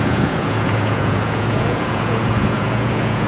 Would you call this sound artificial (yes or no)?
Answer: yes